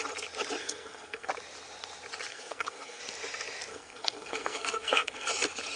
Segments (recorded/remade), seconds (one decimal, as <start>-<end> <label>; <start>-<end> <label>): 0.0-0.6 recorded; 0.6-1.3 remade; 1.3-2.3 recorded; 2.3-3.0 remade; 3.0-3.7 recorded; 3.7-5.3 remade; 5.3-5.8 recorded